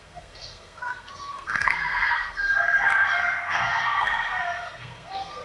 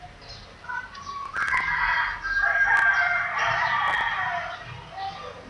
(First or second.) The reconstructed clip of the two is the first